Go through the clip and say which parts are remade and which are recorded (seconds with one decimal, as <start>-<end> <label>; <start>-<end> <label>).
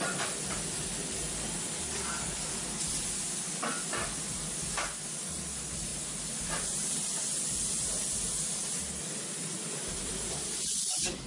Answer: 0.0-11.3 recorded